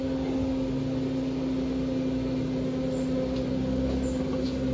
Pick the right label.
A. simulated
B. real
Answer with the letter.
B